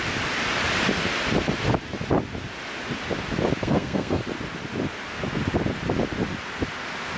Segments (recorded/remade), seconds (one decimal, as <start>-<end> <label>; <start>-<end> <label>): 0.0-3.6 recorded; 3.6-4.2 remade; 4.2-7.2 recorded